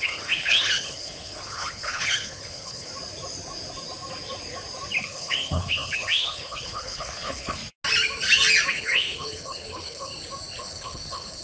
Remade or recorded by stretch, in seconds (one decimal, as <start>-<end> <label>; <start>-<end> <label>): 0.0-2.9 remade; 2.9-5.0 recorded; 5.0-7.6 remade; 7.6-8.7 recorded; 8.7-10.1 remade; 10.1-10.6 recorded; 10.6-11.4 remade